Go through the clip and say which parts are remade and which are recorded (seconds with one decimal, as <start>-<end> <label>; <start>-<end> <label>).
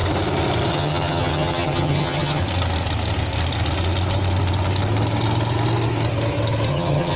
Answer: 0.0-0.7 recorded; 0.7-2.4 remade; 2.4-6.7 recorded; 6.7-7.2 remade